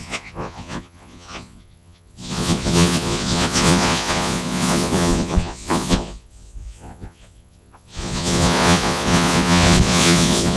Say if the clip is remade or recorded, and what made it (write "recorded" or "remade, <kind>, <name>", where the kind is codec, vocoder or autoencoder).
remade, vocoder, Vocos